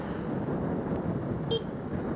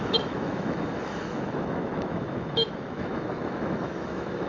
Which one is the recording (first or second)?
first